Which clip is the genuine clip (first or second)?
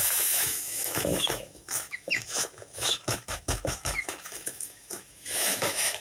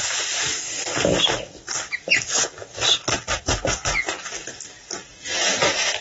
second